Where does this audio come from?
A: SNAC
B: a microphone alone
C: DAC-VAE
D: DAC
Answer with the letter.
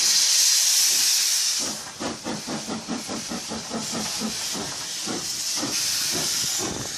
B